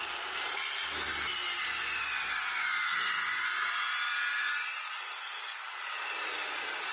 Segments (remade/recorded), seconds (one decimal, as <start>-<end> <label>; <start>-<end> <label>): 0.0-1.8 recorded; 1.8-5.6 remade; 5.6-6.9 recorded